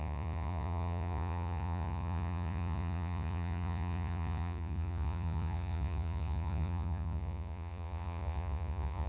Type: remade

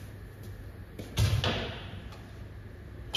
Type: recorded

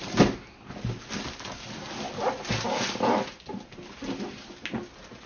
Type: recorded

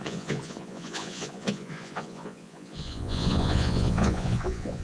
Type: remade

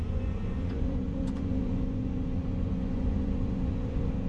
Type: remade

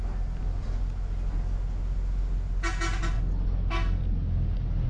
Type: recorded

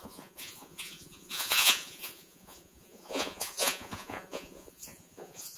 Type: remade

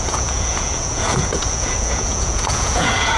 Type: remade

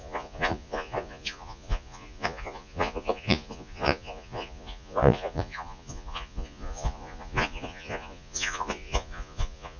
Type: remade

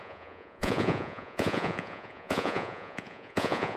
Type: remade